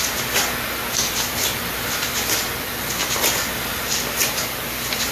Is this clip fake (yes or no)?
no